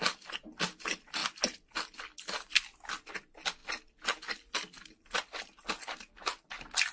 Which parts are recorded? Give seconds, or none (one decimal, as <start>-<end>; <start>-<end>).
0.0-6.9

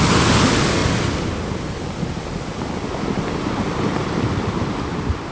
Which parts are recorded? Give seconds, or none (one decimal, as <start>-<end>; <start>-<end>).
0.0-5.3

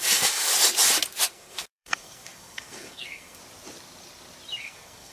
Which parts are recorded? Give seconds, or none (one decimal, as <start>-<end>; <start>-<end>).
0.5-1.3; 3.4-4.6

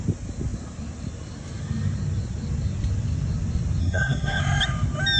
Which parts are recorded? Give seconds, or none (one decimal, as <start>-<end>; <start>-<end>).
0.0-3.8; 4.4-5.2

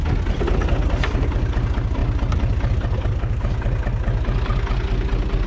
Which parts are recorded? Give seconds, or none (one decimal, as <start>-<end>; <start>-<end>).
0.0-5.5

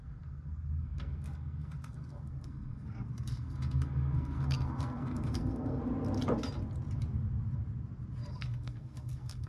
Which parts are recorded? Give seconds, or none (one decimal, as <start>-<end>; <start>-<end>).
5.8-8.3

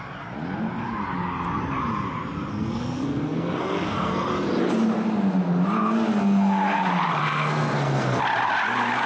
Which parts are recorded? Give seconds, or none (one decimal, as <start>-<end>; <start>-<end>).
0.0-2.5; 4.3-7.2; 8.2-9.1

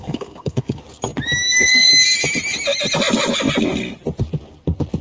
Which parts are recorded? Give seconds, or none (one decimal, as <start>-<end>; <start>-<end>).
0.8-1.5; 1.9-5.0